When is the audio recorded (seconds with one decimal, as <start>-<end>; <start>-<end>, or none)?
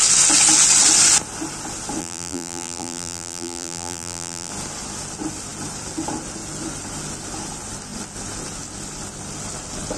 0.0-2.0; 4.5-10.0